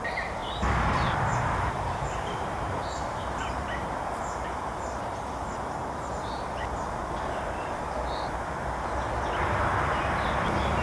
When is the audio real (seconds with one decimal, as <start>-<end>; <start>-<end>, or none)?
0.0-0.4; 4.2-10.8